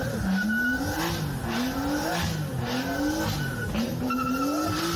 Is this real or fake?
real